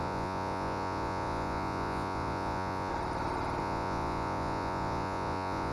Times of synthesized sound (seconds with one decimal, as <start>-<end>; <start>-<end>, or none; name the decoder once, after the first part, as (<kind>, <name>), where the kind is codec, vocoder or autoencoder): 0.0-2.9 (vocoder, Vocos); 3.6-5.7